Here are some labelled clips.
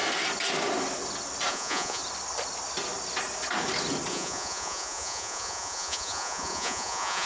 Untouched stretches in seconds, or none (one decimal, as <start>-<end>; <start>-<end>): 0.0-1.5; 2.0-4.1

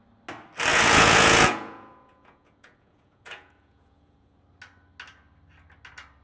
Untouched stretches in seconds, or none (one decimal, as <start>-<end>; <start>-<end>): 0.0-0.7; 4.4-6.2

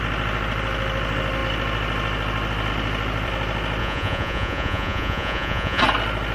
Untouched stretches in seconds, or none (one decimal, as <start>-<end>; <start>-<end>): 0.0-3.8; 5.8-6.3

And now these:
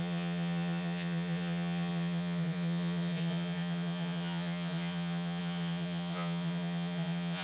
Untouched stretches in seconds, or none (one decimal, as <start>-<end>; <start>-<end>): none